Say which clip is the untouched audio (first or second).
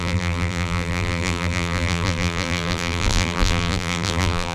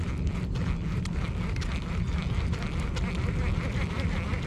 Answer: second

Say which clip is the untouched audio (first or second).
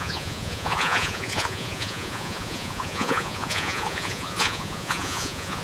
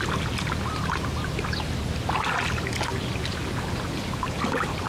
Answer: second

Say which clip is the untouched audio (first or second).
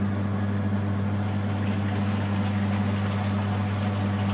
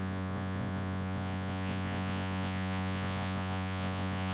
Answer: first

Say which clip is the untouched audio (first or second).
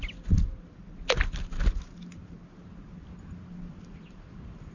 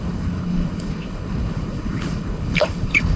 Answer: first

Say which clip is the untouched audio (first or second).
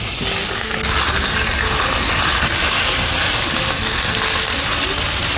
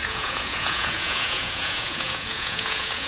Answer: first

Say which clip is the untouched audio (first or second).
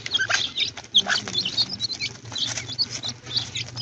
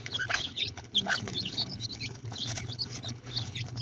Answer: first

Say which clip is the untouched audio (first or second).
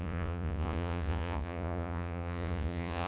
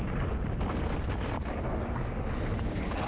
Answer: second